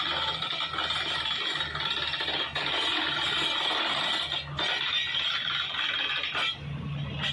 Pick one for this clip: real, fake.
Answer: real